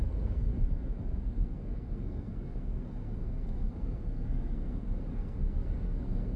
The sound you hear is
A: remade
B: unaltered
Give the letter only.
A